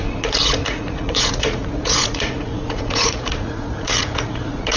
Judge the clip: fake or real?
fake